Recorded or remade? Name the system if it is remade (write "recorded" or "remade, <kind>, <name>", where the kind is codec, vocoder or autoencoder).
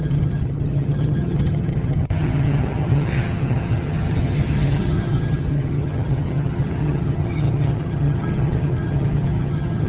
remade, vocoder, HiFi-GAN